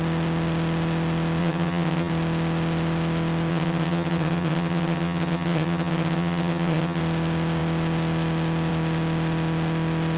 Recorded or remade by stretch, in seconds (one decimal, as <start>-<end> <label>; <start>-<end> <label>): 0.0-1.4 recorded; 1.4-2.1 remade; 2.1-3.5 recorded; 3.5-7.0 remade; 7.0-10.2 recorded